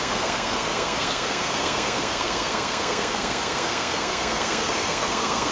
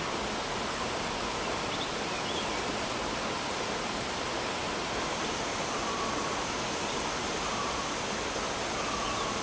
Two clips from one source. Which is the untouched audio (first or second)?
second